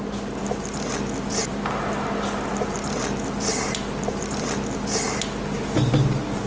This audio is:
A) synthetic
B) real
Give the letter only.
B